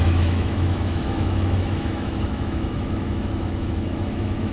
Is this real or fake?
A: fake